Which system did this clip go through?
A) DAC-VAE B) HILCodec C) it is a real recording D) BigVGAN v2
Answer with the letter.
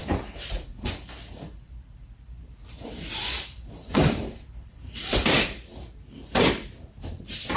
D